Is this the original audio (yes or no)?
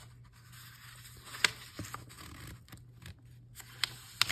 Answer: yes